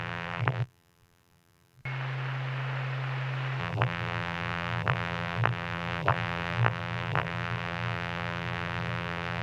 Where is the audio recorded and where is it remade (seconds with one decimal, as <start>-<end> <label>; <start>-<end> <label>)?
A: 0.0-1.8 remade; 1.8-3.6 recorded; 3.6-9.4 remade